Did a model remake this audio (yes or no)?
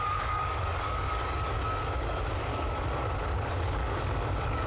yes